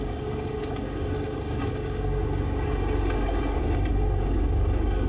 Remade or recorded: remade